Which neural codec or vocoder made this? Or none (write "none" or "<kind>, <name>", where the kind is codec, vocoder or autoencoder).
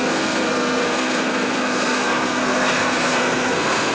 codec, SNAC